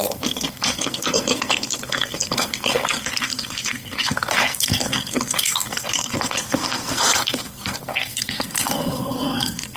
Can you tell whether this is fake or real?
fake